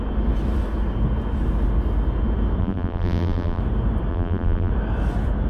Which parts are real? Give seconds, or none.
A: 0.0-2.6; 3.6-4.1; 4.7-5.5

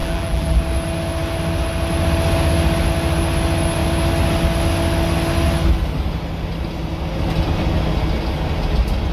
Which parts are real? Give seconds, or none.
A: 0.6-9.1

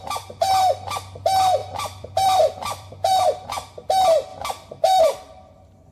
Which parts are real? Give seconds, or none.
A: 0.0-1.6; 3.2-5.9